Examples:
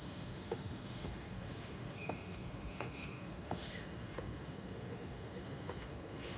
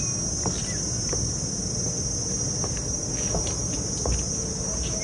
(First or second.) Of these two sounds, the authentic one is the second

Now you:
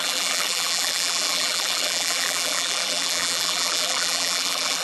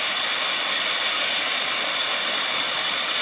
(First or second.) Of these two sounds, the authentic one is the second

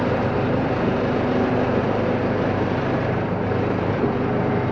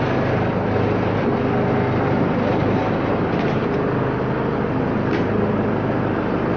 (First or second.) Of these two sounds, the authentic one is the second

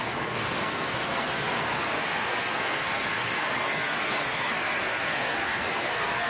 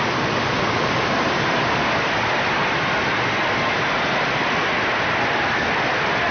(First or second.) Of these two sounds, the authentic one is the second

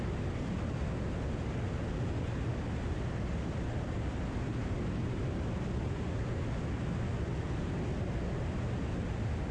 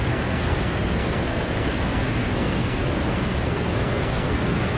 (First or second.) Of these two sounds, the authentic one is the first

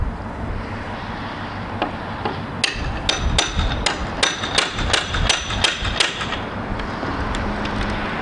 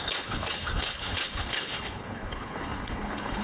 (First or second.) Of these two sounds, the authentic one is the first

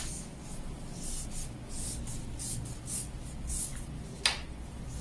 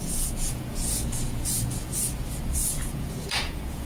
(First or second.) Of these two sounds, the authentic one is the first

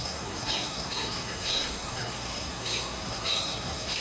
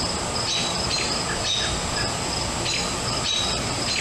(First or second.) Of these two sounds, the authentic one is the second